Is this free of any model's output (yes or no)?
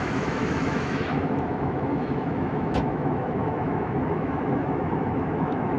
no